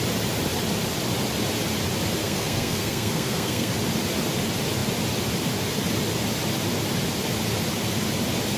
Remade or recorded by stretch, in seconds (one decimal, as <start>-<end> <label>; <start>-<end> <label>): 0.0-2.2 recorded; 2.2-3.7 remade; 3.7-8.6 recorded

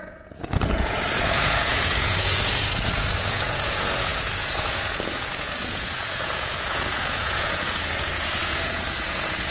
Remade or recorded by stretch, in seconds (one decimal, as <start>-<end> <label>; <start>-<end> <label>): 0.0-9.5 remade

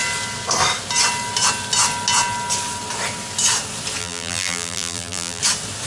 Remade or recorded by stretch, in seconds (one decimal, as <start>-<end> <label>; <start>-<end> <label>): 0.0-4.0 recorded; 4.0-5.4 remade; 5.4-5.9 recorded

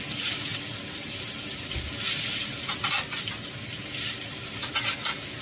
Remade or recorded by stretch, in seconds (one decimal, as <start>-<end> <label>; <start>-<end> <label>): 0.0-5.4 recorded

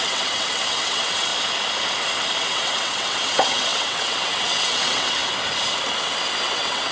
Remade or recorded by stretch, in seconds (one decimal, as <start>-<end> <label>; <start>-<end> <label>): 0.0-1.3 remade; 1.3-2.4 recorded; 2.4-5.2 remade; 5.2-6.4 recorded; 6.4-6.9 remade

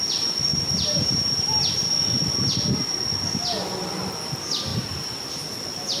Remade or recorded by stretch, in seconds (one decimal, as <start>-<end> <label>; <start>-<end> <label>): 0.0-0.5 recorded; 0.5-1.7 remade; 1.7-4.7 recorded; 4.7-5.3 remade; 5.3-6.0 recorded